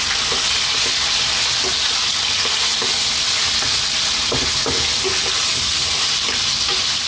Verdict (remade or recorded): recorded